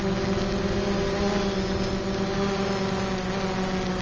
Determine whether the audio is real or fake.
real